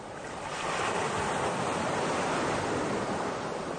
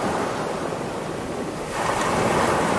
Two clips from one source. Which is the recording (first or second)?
second